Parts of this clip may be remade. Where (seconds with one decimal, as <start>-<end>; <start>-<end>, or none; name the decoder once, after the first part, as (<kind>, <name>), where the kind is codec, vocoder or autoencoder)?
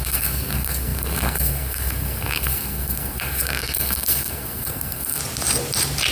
0.0-5.2 (codec, SNAC)